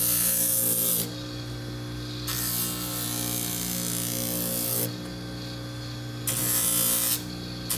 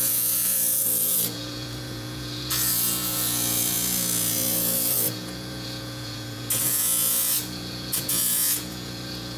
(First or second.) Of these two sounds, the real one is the first